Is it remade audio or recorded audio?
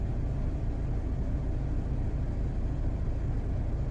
recorded